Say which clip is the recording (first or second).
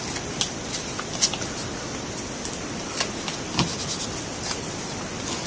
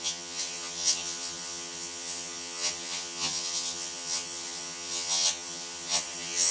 first